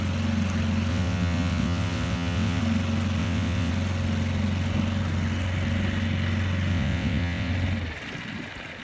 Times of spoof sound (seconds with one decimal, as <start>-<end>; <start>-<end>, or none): 0.9-2.6; 3.2-3.7; 6.7-7.5

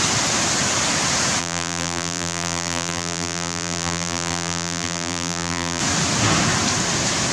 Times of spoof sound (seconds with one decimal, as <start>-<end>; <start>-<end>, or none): 1.4-5.8

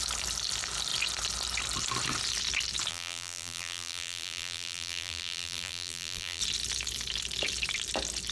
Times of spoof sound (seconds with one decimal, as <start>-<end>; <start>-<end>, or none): 2.9-6.4

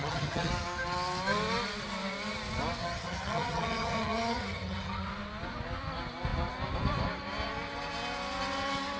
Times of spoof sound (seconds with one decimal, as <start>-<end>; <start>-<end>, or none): 0.0-0.5; 2.8-5.1

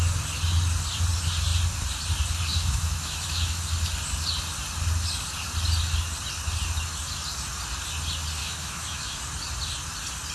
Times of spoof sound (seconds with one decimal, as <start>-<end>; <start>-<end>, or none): 2.5-3.6; 8.4-9.2